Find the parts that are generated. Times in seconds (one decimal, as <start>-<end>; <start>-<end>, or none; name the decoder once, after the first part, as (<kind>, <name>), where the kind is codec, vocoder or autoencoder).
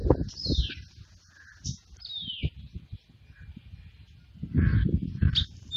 none